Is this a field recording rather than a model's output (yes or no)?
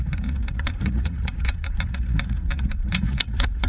no